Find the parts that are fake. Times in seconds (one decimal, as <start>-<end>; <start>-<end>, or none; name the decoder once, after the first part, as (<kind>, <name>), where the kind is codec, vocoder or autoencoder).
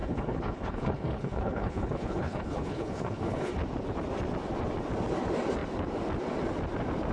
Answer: 0.0-3.5 (codec, HILCodec)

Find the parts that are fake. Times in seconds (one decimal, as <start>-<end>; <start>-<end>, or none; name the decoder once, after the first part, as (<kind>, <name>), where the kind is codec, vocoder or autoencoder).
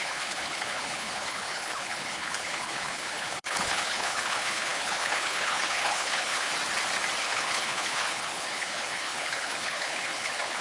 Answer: 0.0-6.5 (codec, HILCodec); 7.2-10.6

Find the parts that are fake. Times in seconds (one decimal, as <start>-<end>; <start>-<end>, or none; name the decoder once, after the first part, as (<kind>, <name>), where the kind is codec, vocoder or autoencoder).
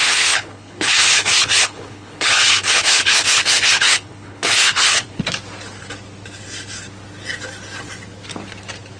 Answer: 0.0-5.2 (codec, HILCodec)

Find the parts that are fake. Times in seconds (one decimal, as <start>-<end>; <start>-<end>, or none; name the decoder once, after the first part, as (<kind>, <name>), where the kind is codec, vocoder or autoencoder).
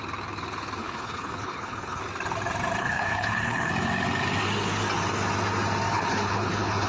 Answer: 0.8-2.0 (codec, HILCodec); 2.8-3.7; 5.9-6.9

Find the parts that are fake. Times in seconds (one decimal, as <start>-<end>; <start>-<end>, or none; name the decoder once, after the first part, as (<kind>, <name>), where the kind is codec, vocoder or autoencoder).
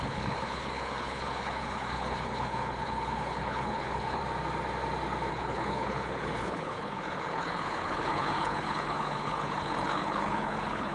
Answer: 0.0-4.2 (codec, HILCodec); 5.3-10.9